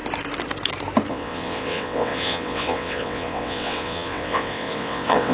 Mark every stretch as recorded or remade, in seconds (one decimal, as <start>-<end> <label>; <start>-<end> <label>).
0.0-1.1 recorded; 1.1-5.3 remade